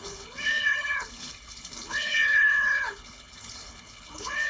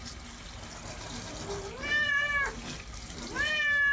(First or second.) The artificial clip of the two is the first